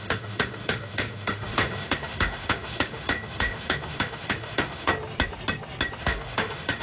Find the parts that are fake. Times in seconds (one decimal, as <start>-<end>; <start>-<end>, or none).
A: 0.0-4.9; 6.0-6.8